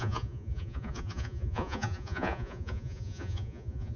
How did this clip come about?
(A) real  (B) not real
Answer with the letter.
B